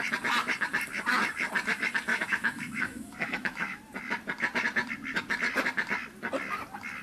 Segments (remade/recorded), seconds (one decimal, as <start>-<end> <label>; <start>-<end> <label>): 0.0-2.1 recorded; 2.1-3.8 remade; 3.8-7.0 recorded